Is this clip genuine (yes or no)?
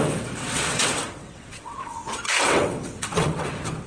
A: no